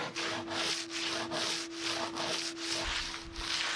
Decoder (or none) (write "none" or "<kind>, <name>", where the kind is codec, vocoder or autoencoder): none